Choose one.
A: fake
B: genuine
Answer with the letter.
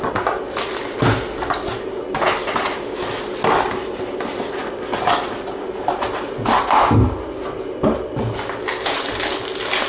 B